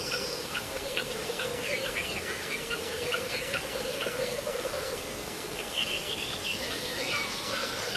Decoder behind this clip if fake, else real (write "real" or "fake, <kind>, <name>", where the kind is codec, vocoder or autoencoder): fake, codec, SNAC